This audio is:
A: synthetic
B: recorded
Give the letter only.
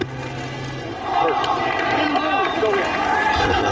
B